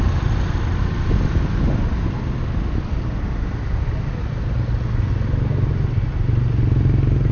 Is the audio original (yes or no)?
yes